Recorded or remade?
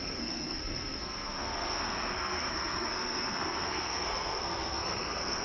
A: remade